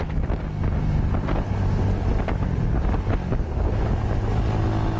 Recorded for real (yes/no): yes